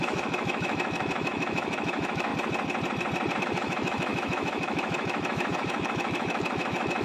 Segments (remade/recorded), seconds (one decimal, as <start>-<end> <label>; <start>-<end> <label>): 0.0-2.3 remade; 2.3-3.4 recorded; 3.4-7.0 remade